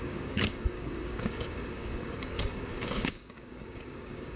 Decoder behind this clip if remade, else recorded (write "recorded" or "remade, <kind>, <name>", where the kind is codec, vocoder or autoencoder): remade, codec, DAC